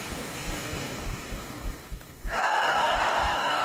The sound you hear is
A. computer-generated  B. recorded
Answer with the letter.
A